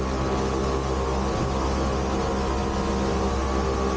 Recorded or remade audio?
recorded